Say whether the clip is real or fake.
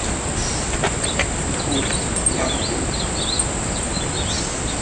real